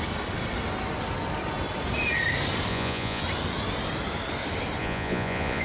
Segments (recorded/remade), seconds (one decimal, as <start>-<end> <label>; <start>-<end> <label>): 0.0-2.7 recorded; 2.7-3.2 remade; 3.2-4.8 recorded; 4.8-5.6 remade